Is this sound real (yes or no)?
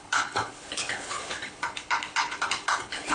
no